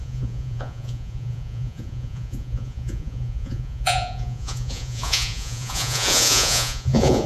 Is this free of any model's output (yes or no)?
no